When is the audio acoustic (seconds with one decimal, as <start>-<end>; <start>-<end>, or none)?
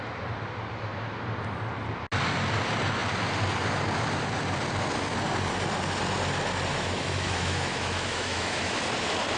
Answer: 0.0-6.7; 8.8-9.4